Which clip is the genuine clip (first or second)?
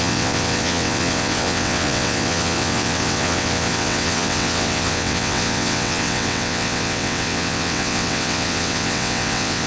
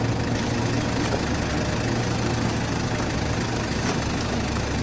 second